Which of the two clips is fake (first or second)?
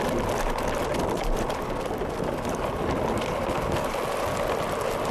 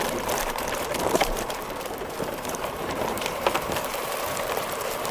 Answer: second